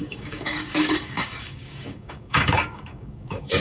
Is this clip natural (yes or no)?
no